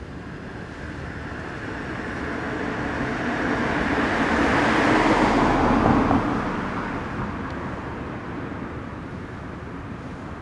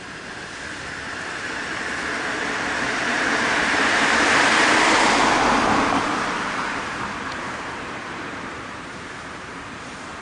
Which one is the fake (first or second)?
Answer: second